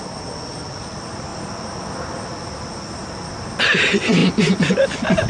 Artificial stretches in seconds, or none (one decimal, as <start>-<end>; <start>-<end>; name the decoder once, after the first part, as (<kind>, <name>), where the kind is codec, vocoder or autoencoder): none